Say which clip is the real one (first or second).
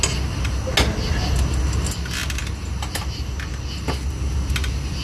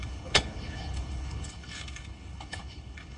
first